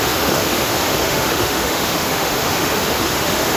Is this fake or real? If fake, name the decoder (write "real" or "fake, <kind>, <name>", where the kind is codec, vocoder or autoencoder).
fake, autoencoder, DAC-VAE